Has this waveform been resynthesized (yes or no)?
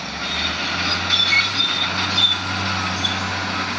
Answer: no